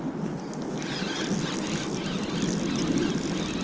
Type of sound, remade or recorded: recorded